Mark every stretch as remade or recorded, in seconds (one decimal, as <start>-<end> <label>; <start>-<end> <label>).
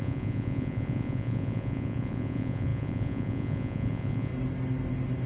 0.0-4.3 remade; 4.3-5.3 recorded